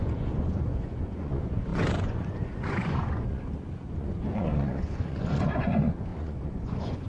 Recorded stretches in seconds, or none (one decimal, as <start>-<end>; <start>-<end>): none